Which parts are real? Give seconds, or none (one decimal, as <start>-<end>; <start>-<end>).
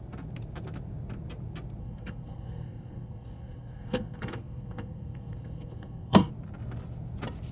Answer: 0.0-1.8; 6.3-7.5